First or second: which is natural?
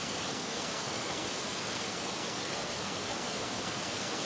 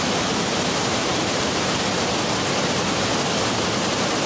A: second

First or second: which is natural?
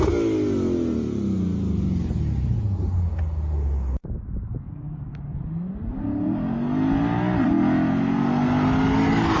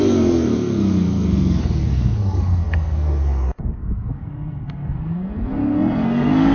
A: first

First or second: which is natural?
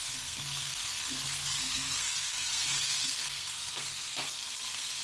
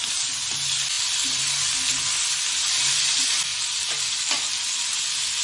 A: second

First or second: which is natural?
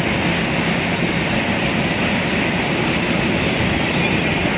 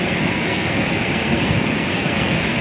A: first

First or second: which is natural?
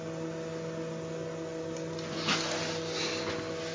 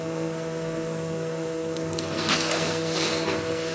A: first